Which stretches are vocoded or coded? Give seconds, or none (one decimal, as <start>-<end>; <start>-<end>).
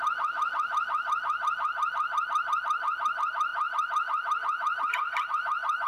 none